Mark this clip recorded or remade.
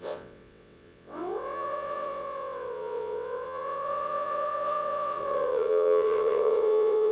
remade